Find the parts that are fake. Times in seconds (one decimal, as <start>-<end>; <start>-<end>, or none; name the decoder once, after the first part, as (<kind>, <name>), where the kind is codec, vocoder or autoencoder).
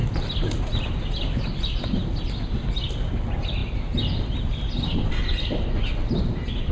none